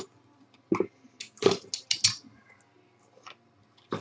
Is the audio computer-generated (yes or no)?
no